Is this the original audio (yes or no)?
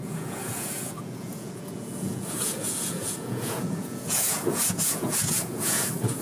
no